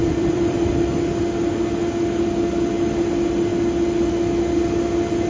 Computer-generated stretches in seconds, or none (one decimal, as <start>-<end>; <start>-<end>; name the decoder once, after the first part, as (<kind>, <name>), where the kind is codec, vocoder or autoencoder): 0.0-0.7 (vocoder, BigVGAN v2)